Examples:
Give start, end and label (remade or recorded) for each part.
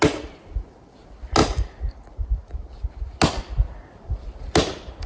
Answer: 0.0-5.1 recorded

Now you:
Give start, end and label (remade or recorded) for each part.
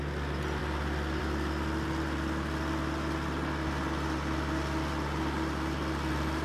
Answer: 0.0-6.4 recorded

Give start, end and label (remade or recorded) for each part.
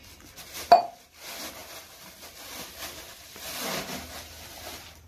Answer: 0.0-1.6 recorded; 1.6-4.1 remade; 4.1-5.1 recorded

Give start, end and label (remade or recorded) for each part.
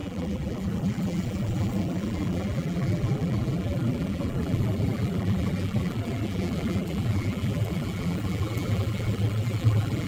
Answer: 0.0-10.1 remade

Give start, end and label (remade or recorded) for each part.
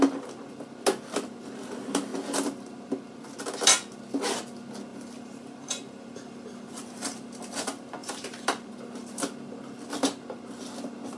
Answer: 0.0-4.9 recorded; 4.9-7.4 remade; 7.4-8.0 recorded; 8.0-8.7 remade; 8.7-11.2 recorded